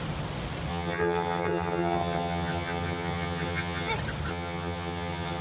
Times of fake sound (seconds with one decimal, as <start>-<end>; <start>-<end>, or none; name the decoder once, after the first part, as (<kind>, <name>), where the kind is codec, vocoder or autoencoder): 0.7-3.9 (vocoder, HiFi-GAN); 4.3-5.4

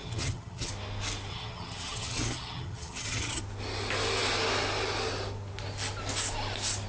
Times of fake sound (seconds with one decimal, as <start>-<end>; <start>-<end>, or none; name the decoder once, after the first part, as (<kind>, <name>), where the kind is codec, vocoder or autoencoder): 0.0-0.7 (vocoder, HiFi-GAN); 1.3-3.4